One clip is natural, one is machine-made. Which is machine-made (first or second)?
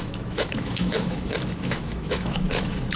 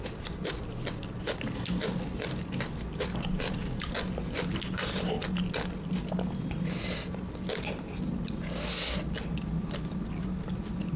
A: first